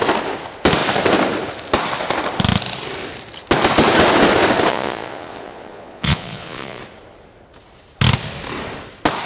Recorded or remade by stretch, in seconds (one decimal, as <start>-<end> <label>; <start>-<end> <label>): 0.0-4.7 recorded; 4.7-6.8 remade; 6.8-9.3 recorded